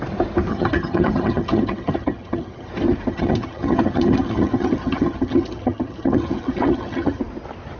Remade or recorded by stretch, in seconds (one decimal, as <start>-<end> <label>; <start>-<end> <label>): 0.0-0.5 recorded; 0.5-2.7 remade; 2.7-3.1 recorded; 3.1-7.2 remade; 7.2-7.8 recorded